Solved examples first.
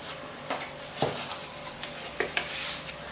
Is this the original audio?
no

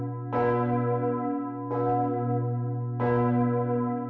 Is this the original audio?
yes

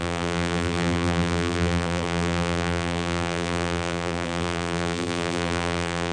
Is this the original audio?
no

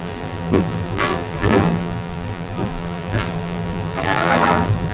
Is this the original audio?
no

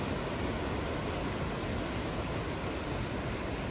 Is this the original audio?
yes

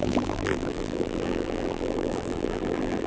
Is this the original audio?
no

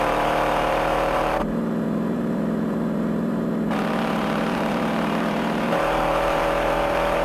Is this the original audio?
no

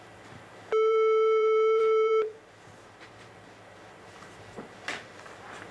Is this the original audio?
no